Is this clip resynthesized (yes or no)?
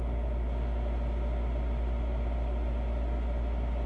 no